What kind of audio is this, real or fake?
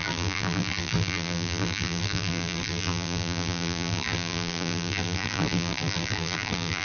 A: fake